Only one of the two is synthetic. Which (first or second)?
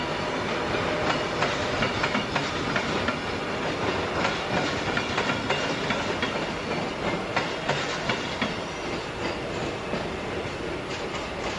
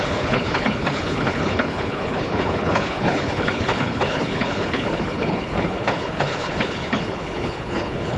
second